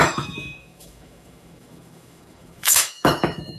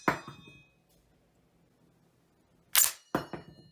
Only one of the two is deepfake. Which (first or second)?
first